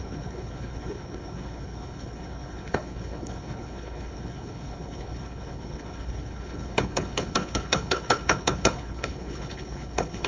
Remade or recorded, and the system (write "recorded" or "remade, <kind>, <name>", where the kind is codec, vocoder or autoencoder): remade, codec, HILCodec